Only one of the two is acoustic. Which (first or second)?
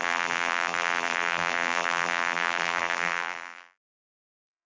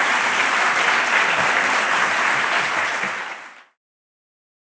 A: second